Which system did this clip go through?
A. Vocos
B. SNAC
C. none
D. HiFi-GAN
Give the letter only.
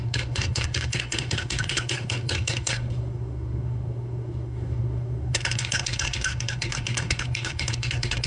B